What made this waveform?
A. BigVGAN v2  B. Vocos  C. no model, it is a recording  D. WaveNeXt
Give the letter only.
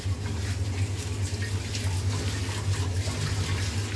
C